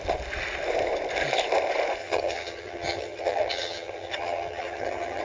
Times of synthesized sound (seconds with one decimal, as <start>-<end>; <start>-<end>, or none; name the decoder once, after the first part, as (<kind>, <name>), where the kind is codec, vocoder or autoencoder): 2.0-5.2 (vocoder, HiFi-GAN)